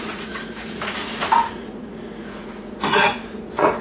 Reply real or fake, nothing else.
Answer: fake